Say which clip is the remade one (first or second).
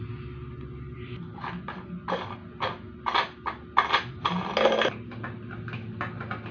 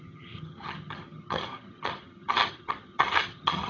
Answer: second